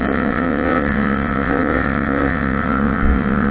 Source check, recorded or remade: remade